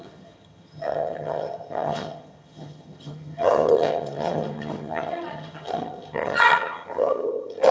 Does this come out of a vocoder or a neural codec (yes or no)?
yes